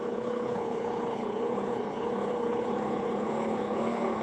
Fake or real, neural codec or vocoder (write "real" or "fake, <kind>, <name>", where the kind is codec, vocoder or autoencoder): fake, codec, HILCodec